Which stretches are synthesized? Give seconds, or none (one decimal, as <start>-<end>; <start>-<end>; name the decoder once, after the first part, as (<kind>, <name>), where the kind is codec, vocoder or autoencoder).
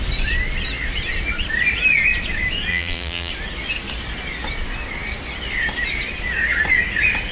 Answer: 2.7-3.3 (vocoder, BigVGAN v2)